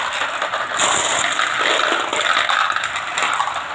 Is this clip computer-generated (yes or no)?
no